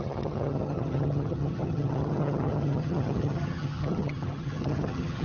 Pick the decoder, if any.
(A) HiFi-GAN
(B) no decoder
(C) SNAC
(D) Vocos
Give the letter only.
A